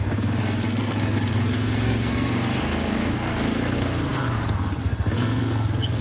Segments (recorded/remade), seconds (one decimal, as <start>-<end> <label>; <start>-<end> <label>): 0.0-6.0 remade